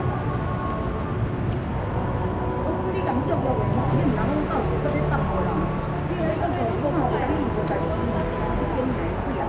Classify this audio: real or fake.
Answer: real